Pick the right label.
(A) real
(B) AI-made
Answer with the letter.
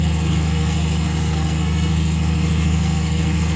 B